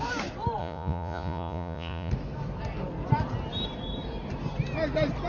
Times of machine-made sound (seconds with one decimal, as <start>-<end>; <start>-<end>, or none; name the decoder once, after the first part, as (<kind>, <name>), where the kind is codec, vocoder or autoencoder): 0.6-2.1 (vocoder, Vocos)